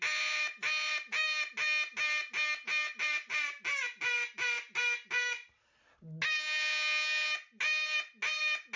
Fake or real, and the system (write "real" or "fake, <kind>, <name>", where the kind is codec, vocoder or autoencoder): real